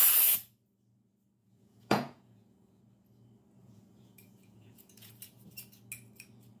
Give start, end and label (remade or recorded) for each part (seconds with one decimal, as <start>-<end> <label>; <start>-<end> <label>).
0.0-1.4 recorded; 1.4-2.8 remade; 2.8-3.6 recorded; 3.6-5.1 remade; 5.1-6.6 recorded

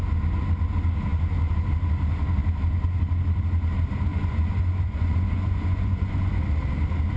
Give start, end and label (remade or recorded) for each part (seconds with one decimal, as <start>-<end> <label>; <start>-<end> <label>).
0.0-4.1 recorded; 4.1-6.4 remade; 6.4-7.2 recorded